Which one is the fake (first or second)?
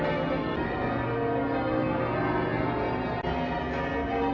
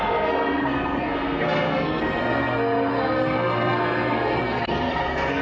second